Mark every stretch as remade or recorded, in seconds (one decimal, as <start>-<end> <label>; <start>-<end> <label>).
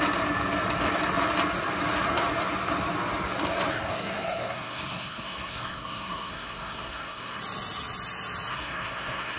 0.0-3.7 recorded; 3.7-7.4 remade; 7.4-8.5 recorded; 8.5-9.4 remade